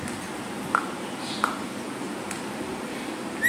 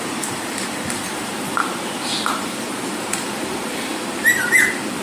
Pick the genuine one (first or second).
first